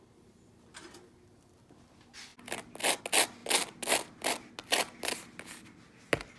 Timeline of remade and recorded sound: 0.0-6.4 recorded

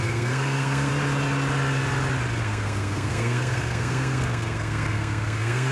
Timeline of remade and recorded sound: 0.0-0.9 remade; 0.9-2.4 recorded; 2.4-5.7 remade